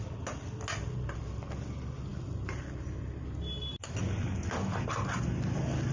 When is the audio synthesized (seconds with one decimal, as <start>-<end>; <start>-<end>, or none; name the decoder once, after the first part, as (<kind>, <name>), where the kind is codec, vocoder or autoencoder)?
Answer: none